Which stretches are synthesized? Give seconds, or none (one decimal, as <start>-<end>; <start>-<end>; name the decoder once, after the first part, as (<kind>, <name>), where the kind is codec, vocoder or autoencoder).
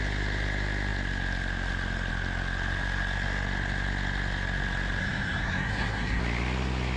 5.0-6.2 (codec, SNAC)